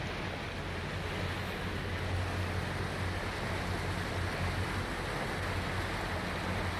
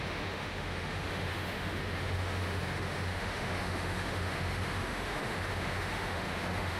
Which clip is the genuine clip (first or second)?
first